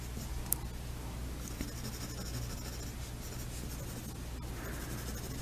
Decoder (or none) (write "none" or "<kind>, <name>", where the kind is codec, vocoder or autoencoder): none